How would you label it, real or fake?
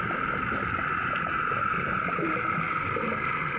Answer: real